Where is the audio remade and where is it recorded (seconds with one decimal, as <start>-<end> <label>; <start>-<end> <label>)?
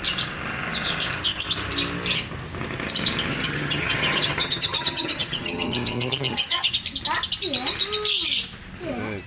0.0-3.3 recorded; 3.3-6.7 remade; 6.7-9.3 recorded